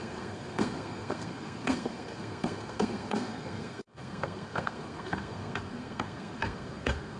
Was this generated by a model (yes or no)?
yes